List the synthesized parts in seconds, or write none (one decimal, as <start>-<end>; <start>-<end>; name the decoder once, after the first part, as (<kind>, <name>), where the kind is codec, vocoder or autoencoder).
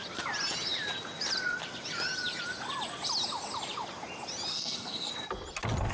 4.5-5.1 (codec, SNAC)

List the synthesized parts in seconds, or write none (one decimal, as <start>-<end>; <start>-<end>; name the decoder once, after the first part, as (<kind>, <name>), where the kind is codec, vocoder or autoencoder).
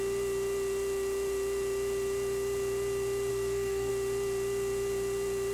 3.3-3.9 (codec, SNAC)